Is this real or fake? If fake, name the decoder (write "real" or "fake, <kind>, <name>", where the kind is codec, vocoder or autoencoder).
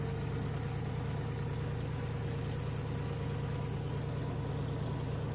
real